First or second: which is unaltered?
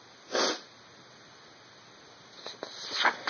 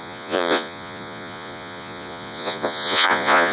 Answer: first